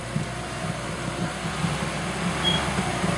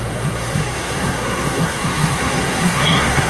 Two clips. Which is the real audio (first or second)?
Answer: first